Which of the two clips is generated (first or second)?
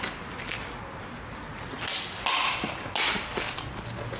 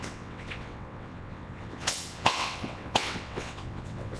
second